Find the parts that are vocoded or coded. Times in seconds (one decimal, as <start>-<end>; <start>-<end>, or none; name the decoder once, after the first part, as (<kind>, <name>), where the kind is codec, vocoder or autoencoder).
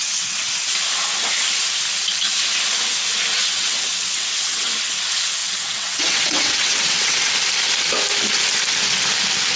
0.0-0.5 (vocoder, WaveNeXt); 3.3-4.7; 5.4-7.3